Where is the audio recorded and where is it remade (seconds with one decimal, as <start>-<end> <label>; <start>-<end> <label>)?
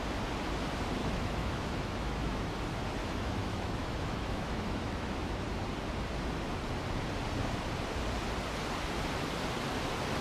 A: 0.0-1.0 recorded; 1.0-2.4 remade; 2.4-3.0 recorded; 3.0-5.3 remade; 5.3-10.2 recorded